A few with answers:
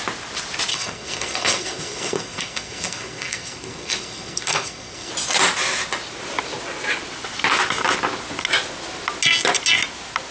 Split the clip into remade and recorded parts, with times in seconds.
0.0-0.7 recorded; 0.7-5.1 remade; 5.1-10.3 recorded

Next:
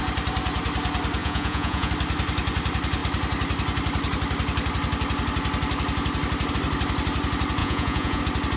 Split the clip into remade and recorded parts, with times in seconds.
0.0-1.2 recorded; 1.2-1.9 remade; 1.9-7.6 recorded; 7.6-8.2 remade; 8.2-8.6 recorded

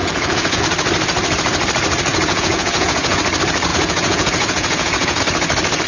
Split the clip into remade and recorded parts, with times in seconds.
0.0-0.6 remade; 0.6-2.1 recorded; 2.1-3.2 remade; 3.2-3.7 recorded; 3.7-5.2 remade; 5.2-5.9 recorded

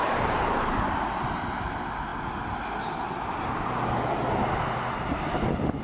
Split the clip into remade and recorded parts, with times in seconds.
0.0-0.6 remade; 0.6-5.8 recorded

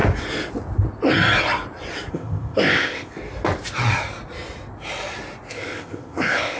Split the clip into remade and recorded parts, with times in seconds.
0.0-2.1 recorded; 2.1-3.1 remade; 3.1-5.5 recorded; 5.5-6.6 remade

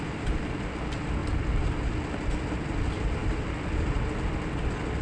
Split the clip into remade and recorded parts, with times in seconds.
0.0-5.0 recorded

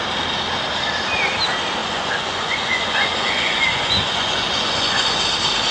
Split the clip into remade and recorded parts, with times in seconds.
0.0-1.8 recorded; 1.8-5.2 remade; 5.2-5.7 recorded

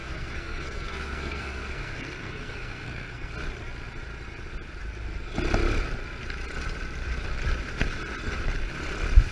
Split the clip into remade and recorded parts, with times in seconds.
0.0-3.3 remade; 3.3-9.3 recorded